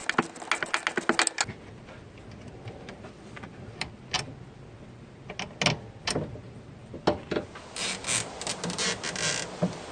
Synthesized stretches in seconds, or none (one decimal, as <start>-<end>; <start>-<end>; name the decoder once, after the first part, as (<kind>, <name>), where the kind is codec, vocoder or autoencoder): none